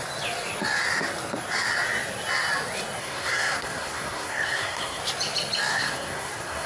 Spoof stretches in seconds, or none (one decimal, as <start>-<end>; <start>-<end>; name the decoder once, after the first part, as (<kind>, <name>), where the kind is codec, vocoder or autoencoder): 3.0-5.0 (codec, SNAC); 5.7-6.7